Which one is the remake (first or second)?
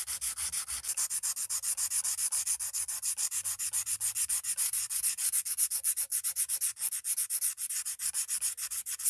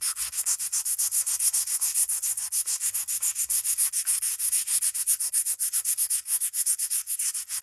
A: second